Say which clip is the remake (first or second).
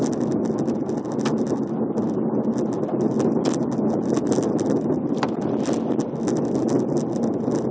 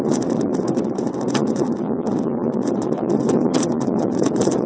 second